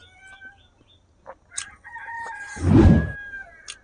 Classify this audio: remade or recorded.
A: recorded